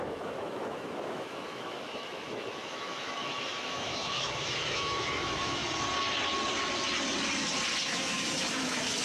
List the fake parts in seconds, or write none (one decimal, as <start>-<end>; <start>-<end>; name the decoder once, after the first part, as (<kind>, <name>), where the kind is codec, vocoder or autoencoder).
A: 0.0-5.6 (autoencoder, DAC-VAE); 7.8-9.0